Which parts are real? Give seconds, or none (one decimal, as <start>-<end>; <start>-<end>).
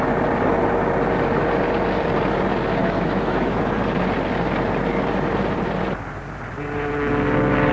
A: 0.0-2.8; 3.6-7.7